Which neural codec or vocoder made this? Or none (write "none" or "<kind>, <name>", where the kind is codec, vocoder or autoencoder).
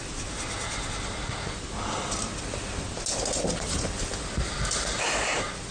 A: none